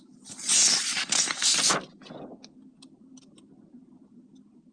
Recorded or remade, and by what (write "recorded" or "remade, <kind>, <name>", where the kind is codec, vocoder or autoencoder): recorded